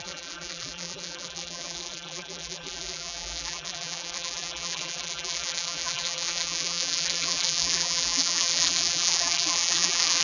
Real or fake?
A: fake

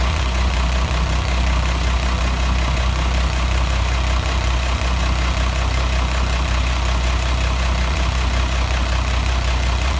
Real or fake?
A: fake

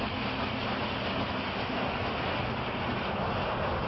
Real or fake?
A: real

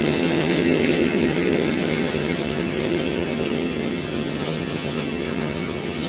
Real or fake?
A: fake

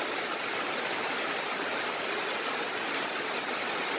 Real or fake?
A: real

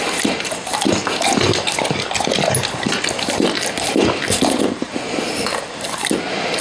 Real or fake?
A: real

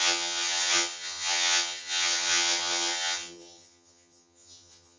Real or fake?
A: fake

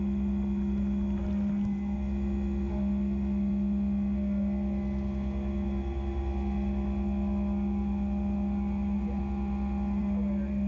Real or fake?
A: real